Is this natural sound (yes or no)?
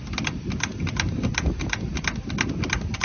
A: yes